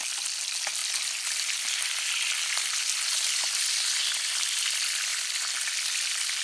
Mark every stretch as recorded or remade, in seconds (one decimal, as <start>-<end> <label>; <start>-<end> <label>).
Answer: 0.0-6.4 recorded